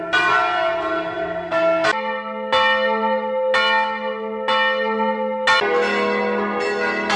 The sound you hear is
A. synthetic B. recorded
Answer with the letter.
B